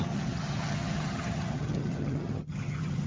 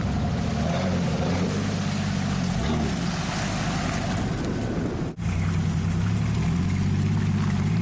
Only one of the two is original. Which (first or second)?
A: second